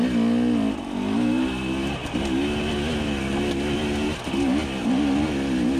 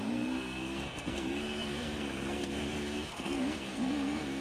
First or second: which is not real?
second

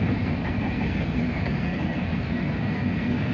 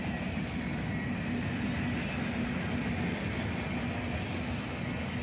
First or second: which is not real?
first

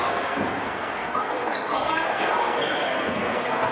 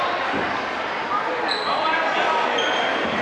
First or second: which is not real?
first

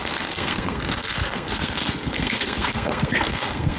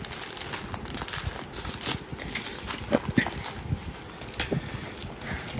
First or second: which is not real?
first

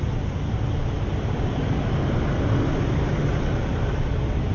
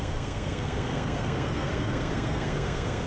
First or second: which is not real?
second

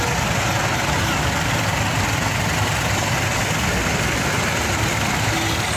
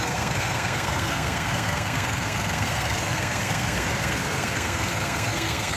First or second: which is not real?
second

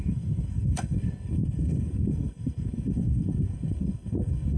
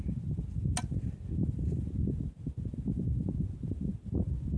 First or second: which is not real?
first